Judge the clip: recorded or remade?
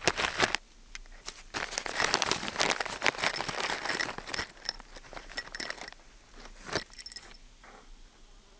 recorded